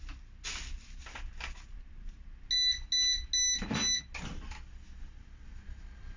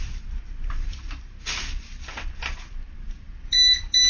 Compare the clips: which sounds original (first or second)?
first